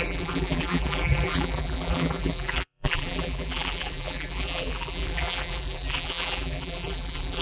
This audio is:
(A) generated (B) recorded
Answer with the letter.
A